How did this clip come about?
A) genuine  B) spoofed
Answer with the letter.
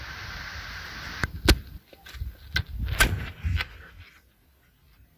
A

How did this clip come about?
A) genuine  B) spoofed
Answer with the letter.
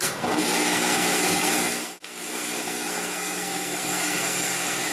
B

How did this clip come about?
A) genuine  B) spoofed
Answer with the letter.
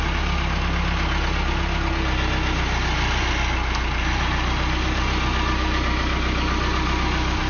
A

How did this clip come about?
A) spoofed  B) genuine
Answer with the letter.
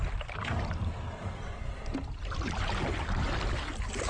B